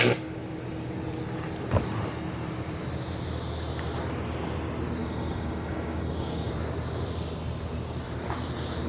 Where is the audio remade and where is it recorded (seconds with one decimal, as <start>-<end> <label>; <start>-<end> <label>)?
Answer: 0.0-5.0 recorded; 5.0-6.5 remade; 6.5-8.9 recorded

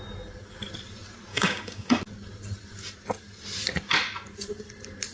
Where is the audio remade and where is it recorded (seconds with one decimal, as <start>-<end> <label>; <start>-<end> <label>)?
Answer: 0.0-1.3 recorded; 1.3-2.0 remade; 2.0-5.1 recorded

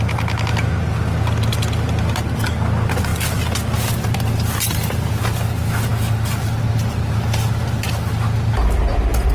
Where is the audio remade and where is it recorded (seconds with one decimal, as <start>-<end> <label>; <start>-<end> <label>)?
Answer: 0.0-9.3 recorded

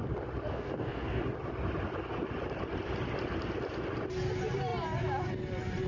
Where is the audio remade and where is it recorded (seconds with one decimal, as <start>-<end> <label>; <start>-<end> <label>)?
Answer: 0.0-0.5 recorded; 0.5-1.2 remade; 1.2-5.9 recorded

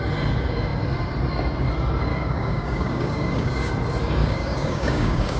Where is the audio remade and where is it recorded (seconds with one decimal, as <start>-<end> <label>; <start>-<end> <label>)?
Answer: 0.0-2.1 recorded; 2.1-3.7 remade; 3.7-4.2 recorded; 4.2-5.4 remade